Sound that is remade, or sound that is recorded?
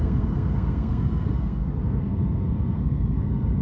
remade